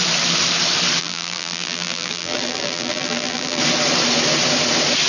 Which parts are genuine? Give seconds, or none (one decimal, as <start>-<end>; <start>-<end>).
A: 0.0-1.0; 3.6-5.1